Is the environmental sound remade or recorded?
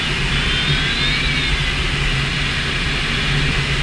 recorded